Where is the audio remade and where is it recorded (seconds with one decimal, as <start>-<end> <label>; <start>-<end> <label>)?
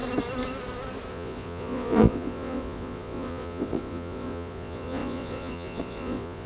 0.0-1.1 recorded; 1.1-6.5 remade